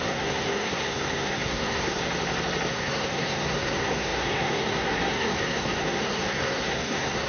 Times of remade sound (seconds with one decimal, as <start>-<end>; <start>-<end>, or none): 0.0-2.0; 2.7-7.3